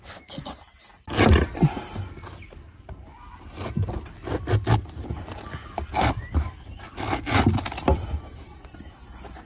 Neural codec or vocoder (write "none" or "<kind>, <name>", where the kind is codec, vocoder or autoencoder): none